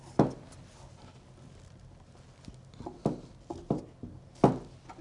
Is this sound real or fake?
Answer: real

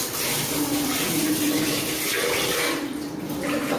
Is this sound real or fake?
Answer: real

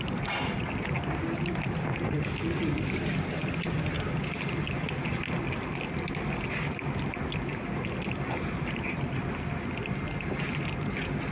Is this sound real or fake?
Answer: real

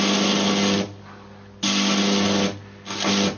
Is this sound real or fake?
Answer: real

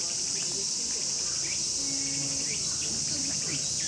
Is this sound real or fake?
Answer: real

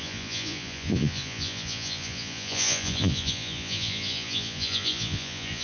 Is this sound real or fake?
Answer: fake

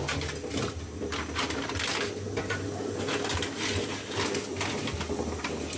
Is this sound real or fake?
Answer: real